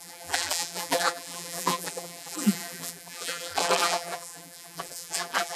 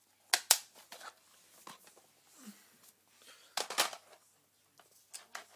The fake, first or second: first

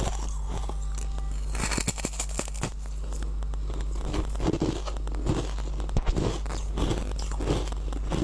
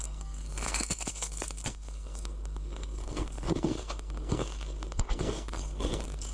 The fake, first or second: second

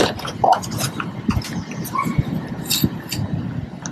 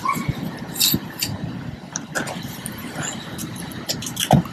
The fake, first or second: second